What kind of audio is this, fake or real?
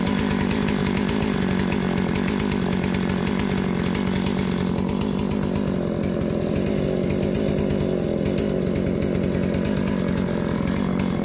real